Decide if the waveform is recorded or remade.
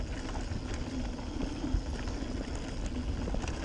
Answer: recorded